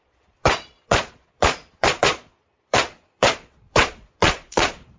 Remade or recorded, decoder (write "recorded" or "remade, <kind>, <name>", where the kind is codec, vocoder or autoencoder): remade, vocoder, Vocos